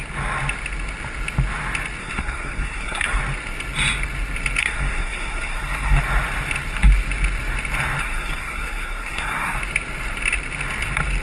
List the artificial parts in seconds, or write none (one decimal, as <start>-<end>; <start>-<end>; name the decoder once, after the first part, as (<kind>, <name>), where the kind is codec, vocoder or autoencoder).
2.0-3.2 (codec, SNAC); 4.6-6.0; 8.0-9.6